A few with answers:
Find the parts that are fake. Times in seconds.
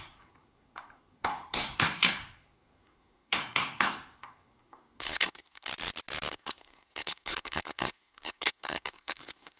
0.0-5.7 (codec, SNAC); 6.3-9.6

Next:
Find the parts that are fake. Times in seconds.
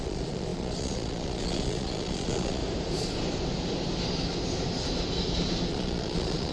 0.0-2.6 (vocoder, Vocos); 5.7-6.5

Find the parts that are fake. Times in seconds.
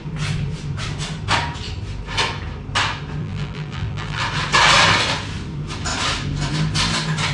3.2-4.2 (vocoder, BigVGAN v2)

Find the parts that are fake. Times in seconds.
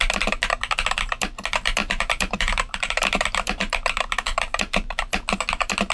1.8-5.0 (vocoder, BigVGAN v2)